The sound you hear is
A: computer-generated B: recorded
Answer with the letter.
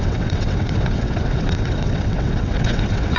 A